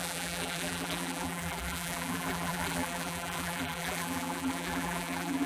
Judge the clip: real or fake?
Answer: fake